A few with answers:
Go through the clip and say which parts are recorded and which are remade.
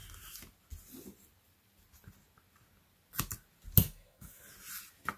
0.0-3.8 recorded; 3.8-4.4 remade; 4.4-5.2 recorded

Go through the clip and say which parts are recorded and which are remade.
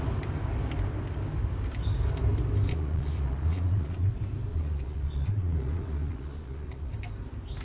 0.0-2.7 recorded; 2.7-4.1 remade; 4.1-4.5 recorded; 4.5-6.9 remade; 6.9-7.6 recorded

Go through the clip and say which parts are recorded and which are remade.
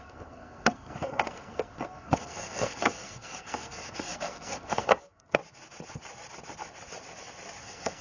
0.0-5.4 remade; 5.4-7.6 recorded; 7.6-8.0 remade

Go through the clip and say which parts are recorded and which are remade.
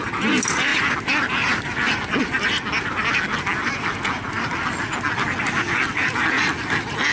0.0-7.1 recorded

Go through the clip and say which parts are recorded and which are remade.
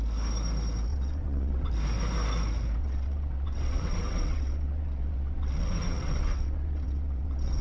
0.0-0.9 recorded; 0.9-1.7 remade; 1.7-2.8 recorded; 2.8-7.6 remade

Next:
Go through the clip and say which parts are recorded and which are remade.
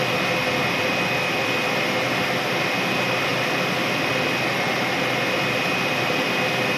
0.0-6.8 recorded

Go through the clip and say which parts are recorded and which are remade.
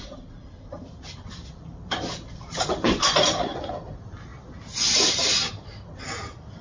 0.0-4.3 remade; 4.3-5.5 recorded; 5.5-6.6 remade